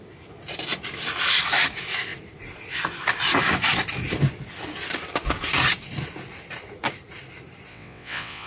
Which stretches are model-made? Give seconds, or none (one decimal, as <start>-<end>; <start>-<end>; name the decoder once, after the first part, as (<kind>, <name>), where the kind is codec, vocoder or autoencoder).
7.7-8.5 (vocoder, WaveNeXt)